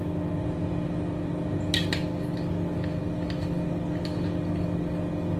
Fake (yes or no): no